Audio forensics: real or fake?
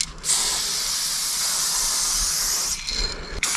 real